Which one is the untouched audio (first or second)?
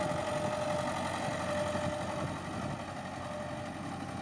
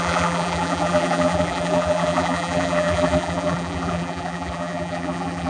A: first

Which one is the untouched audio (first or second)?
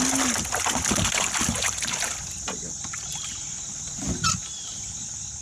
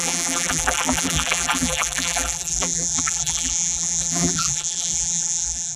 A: first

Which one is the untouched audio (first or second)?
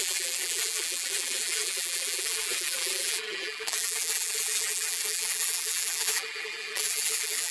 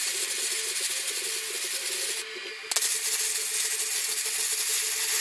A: second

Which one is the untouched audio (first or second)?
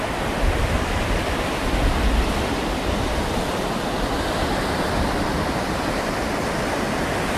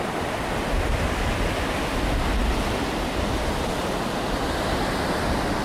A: second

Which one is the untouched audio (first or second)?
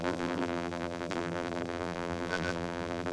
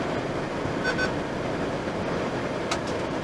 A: second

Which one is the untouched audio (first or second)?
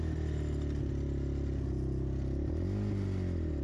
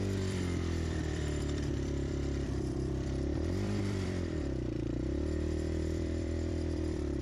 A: first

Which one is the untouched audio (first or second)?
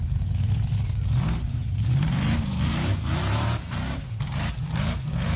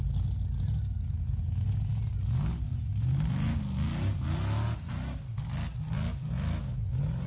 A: second